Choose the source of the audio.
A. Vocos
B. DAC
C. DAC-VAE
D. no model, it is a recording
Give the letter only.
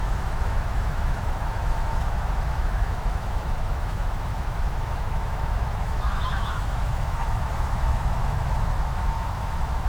C